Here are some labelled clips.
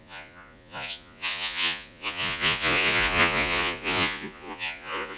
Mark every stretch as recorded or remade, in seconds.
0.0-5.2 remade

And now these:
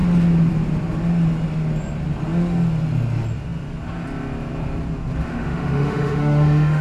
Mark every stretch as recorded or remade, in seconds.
0.0-5.3 recorded; 5.3-6.8 remade

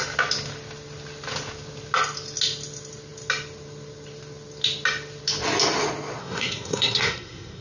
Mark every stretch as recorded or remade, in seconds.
0.0-6.2 recorded; 6.2-7.6 remade

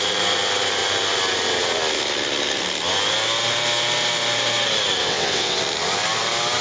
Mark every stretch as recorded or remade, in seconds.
0.0-5.0 recorded; 5.0-5.6 remade; 5.6-6.6 recorded